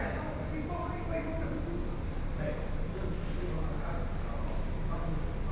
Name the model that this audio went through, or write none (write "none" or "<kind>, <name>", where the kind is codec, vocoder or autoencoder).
none